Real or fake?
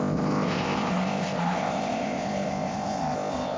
fake